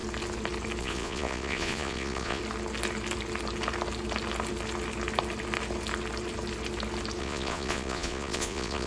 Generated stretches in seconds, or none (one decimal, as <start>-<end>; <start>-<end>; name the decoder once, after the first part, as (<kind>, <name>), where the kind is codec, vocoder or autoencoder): 0.8-2.4 (vocoder, Vocos); 7.2-8.9